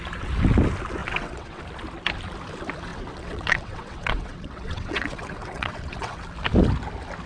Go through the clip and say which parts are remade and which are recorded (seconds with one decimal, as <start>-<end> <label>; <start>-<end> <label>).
0.0-1.0 recorded; 1.0-1.6 remade; 1.6-2.9 recorded; 2.9-6.2 remade; 6.2-7.3 recorded